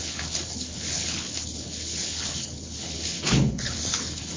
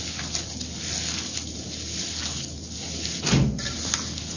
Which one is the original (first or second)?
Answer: second